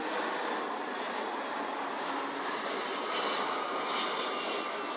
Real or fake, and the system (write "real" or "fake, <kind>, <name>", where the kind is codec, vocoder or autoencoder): real